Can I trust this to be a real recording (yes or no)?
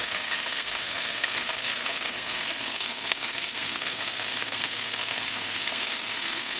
no